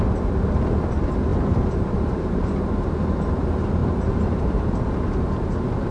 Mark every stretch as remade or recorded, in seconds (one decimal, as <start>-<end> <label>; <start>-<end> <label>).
0.0-1.3 recorded; 1.3-2.7 remade; 2.7-3.8 recorded; 3.8-4.6 remade; 4.6-5.9 recorded